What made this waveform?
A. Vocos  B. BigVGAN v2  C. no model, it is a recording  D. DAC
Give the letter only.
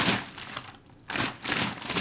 C